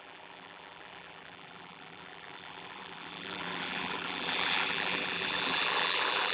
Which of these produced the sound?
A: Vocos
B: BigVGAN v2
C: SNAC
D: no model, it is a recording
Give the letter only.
B